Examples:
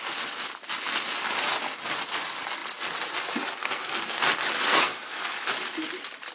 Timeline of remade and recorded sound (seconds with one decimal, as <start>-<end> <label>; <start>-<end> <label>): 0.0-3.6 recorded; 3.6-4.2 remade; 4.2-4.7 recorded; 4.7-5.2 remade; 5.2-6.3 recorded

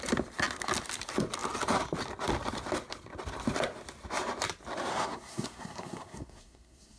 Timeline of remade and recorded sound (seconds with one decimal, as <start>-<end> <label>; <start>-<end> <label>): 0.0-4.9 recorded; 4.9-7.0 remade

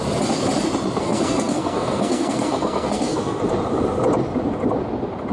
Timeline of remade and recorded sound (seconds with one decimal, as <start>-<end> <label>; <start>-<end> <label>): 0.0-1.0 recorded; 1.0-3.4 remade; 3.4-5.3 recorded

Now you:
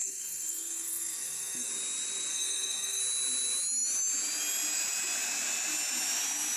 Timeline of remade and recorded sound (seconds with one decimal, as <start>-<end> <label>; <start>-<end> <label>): 0.0-1.7 remade; 1.7-2.3 recorded; 2.3-3.0 remade; 3.0-6.6 recorded